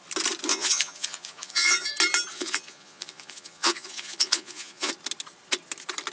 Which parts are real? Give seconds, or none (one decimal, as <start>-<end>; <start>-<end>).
0.0-0.5; 1.9-2.3; 4.9-6.1